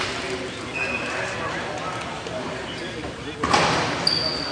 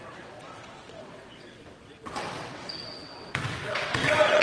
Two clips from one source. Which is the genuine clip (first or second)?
first